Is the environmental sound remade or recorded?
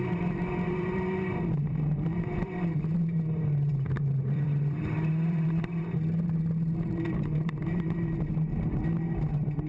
remade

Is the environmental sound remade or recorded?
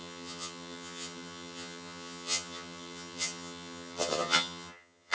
remade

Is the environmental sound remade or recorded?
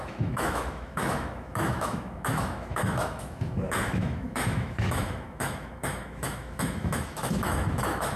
remade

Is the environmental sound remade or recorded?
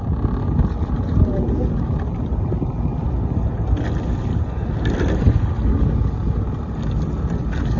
recorded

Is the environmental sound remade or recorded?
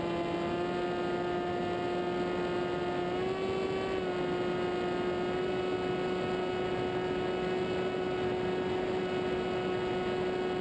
recorded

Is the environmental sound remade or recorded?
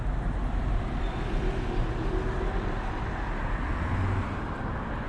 recorded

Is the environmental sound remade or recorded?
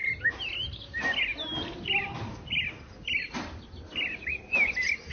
recorded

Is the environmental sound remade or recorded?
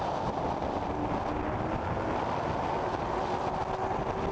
recorded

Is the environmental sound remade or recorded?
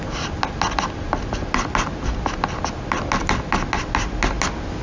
recorded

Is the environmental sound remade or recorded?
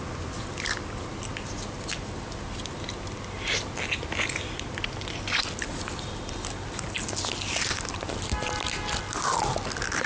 recorded